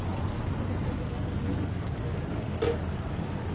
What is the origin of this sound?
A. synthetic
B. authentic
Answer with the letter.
B